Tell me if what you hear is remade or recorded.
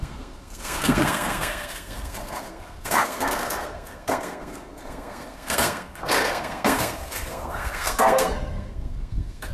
remade